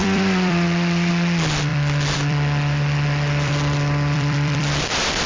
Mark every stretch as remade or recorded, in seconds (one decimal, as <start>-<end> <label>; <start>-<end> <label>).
0.0-1.1 remade; 1.1-1.7 recorded; 1.7-5.3 remade